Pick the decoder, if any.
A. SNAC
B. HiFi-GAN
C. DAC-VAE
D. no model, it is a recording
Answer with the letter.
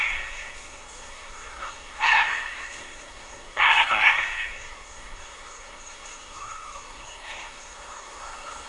A